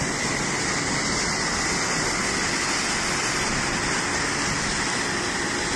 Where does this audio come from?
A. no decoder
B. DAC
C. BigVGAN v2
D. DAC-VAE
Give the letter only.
A